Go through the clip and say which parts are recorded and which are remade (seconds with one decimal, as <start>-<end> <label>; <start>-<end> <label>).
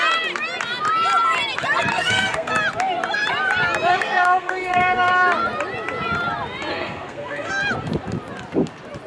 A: 0.0-1.9 recorded; 1.9-2.5 remade; 2.5-3.9 recorded; 3.9-5.1 remade; 5.1-6.7 recorded; 6.7-7.5 remade; 7.5-9.1 recorded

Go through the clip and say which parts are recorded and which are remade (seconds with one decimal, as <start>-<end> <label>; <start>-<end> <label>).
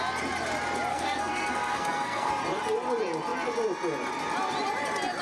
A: 0.0-0.9 recorded; 0.9-2.3 remade; 2.3-5.2 recorded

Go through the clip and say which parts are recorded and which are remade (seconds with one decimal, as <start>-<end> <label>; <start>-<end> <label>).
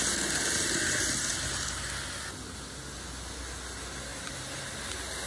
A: 0.0-5.3 recorded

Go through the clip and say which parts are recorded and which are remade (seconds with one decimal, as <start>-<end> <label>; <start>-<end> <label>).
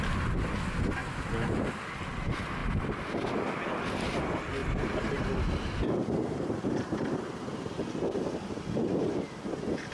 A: 0.0-2.6 recorded; 2.6-3.3 remade; 3.3-4.6 recorded; 4.6-7.5 remade; 7.5-9.9 recorded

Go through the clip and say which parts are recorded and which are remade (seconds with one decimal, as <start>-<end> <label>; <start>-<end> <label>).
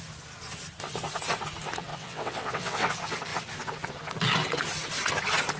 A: 0.0-1.9 recorded; 1.9-2.9 remade; 2.9-5.6 recorded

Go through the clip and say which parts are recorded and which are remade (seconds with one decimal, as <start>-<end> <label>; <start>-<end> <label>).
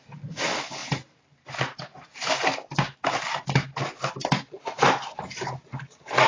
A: 0.0-6.3 recorded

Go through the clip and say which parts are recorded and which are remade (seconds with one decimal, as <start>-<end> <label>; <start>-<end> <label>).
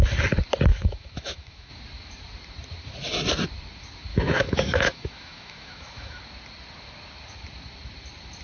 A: 0.0-0.7 recorded; 0.7-1.7 remade; 1.7-4.1 recorded; 4.1-6.2 remade; 6.2-8.4 recorded